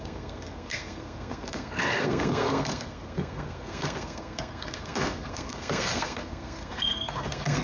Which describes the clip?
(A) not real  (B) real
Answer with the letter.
A